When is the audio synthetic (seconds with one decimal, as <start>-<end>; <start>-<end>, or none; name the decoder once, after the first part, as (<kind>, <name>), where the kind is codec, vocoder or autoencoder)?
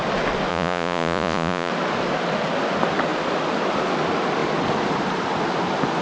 0.5-1.7 (vocoder, Vocos)